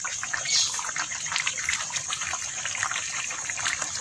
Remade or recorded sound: remade